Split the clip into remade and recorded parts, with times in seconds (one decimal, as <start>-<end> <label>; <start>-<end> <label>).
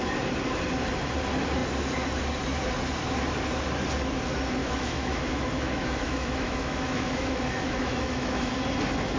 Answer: 0.0-4.6 recorded; 4.6-8.5 remade; 8.5-9.2 recorded